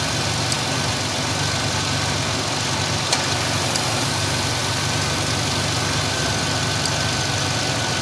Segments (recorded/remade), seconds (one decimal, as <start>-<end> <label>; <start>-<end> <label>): 0.0-8.0 recorded